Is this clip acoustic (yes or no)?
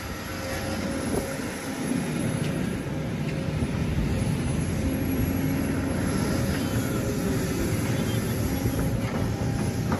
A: yes